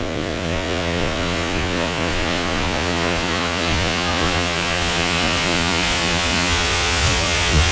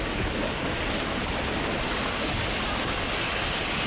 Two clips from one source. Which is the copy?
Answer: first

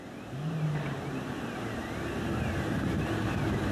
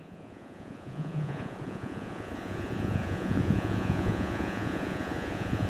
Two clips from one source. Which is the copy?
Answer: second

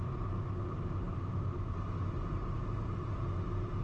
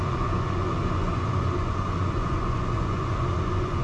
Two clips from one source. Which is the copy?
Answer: second